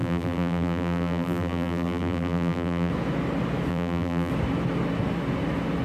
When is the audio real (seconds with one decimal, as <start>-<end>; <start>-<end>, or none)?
2.9-3.7; 4.3-5.8